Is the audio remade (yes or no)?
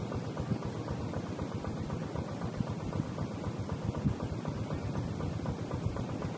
no